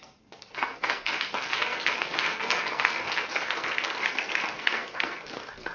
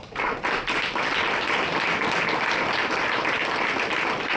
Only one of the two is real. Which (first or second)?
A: second